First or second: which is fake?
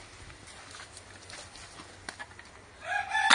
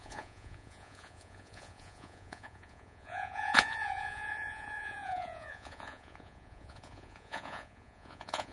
second